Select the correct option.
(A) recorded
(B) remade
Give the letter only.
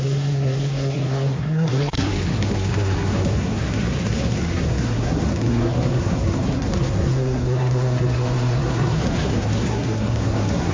B